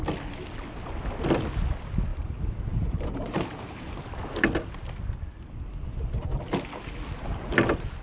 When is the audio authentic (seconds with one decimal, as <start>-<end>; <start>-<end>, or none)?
0.0-2.1; 4.0-8.0